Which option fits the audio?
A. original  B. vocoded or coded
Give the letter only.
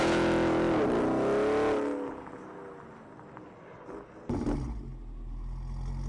A